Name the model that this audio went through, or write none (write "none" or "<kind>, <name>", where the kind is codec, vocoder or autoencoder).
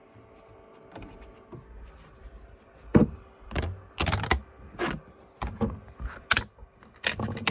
none